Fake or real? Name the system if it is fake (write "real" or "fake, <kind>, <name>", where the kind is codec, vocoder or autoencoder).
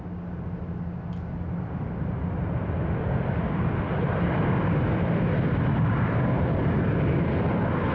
real